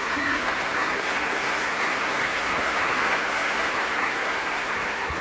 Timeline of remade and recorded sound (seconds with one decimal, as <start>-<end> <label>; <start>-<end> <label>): 0.0-5.2 remade

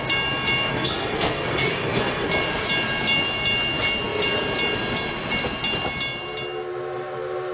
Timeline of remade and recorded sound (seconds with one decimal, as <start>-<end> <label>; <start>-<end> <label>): 0.0-0.7 recorded; 0.7-2.3 remade; 2.3-7.5 recorded

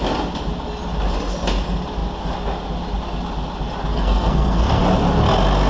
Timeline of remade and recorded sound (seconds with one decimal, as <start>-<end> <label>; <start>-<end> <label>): 0.0-3.9 recorded; 3.9-4.8 remade; 4.8-5.7 recorded

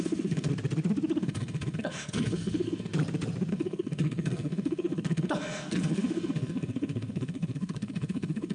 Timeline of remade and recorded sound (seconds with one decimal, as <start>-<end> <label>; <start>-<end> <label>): 0.0-0.5 remade; 0.5-1.2 recorded; 1.2-2.9 remade; 2.9-3.5 recorded; 3.5-8.5 remade